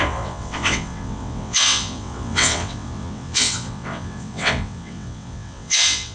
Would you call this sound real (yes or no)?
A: no